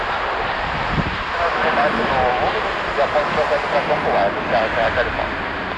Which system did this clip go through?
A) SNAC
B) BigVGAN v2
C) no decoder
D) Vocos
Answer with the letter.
C